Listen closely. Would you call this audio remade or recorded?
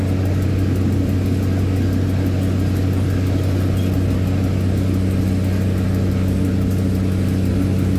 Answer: recorded